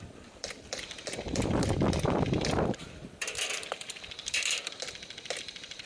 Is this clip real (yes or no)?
no